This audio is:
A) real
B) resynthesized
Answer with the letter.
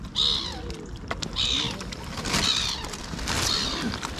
A